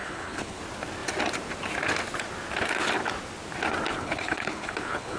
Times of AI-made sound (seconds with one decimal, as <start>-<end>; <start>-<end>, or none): 0.0-0.6; 3.9-5.2